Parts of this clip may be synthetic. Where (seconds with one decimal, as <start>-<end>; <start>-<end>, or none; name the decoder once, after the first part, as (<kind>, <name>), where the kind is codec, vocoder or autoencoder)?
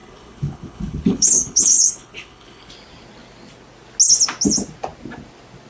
0.0-2.7 (codec, HILCodec)